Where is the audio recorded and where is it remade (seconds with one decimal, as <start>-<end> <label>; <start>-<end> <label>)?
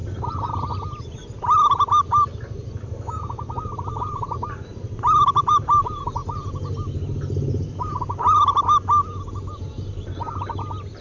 0.0-3.9 recorded; 3.9-6.2 remade; 6.2-9.3 recorded; 9.3-11.0 remade